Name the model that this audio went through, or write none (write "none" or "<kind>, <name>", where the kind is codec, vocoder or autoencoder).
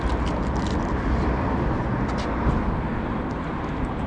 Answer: none